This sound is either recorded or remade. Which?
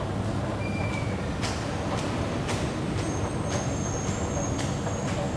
recorded